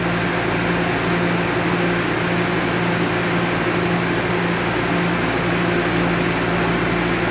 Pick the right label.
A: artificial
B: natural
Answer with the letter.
B